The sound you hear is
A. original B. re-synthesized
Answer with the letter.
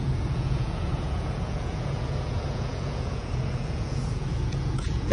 B